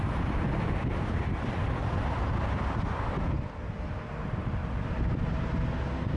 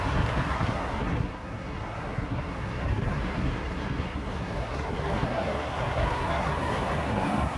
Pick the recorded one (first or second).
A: first